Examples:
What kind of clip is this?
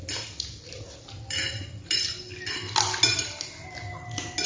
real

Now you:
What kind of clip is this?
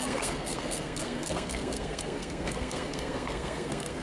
fake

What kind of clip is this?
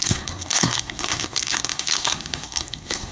fake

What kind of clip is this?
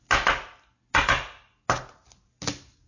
real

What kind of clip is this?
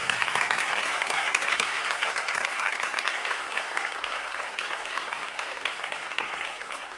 fake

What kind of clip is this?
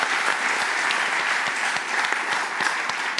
real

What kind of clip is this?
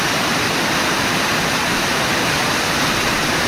real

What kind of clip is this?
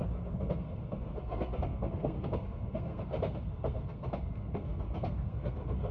fake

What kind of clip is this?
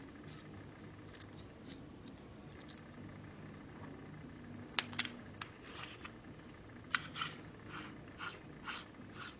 real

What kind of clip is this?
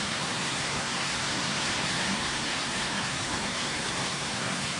fake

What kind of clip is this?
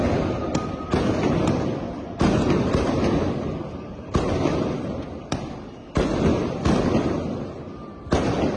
real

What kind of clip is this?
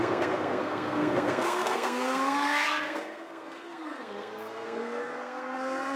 fake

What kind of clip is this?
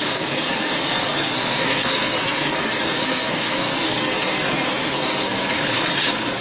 fake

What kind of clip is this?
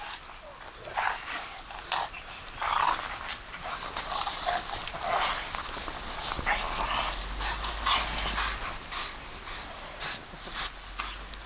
real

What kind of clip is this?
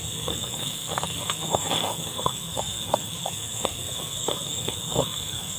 fake